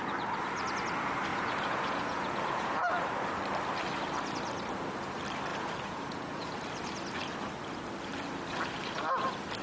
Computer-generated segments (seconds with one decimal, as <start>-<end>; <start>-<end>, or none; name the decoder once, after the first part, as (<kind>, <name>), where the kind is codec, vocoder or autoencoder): 1.3-2.9 (vocoder, Vocos); 5.5-6.5